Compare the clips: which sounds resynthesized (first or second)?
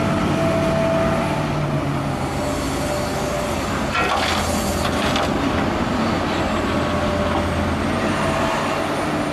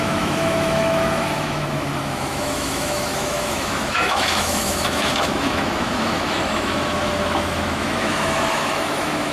second